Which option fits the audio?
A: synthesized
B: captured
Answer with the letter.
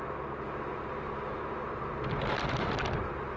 B